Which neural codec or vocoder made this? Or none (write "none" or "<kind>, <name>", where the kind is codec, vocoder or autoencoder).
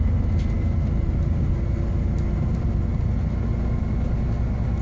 none